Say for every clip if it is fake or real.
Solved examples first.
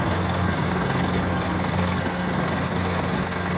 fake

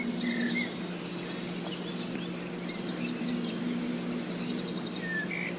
real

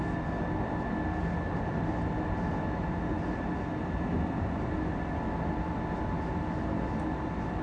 real